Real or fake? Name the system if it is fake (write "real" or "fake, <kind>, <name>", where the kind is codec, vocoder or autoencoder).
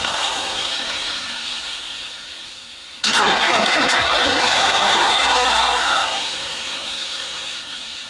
fake, codec, SNAC